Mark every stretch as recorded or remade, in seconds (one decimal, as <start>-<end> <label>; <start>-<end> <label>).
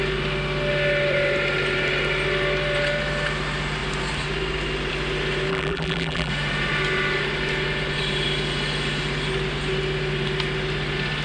0.0-5.5 recorded; 5.5-6.3 remade; 6.3-11.2 recorded